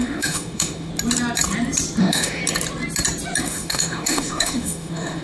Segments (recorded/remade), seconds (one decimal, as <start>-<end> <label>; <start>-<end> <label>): 0.0-0.9 remade; 0.9-2.0 recorded; 2.0-2.4 remade; 2.4-3.4 recorded; 3.4-5.2 remade